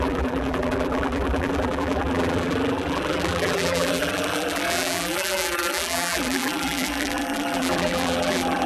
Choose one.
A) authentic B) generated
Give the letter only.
B